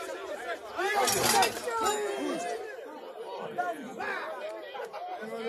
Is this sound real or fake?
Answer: real